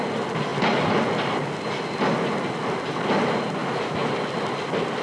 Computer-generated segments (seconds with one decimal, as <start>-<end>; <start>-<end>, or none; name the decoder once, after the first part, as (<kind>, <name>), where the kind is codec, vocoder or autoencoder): 3.6-4.1 (autoencoder, DAC-VAE)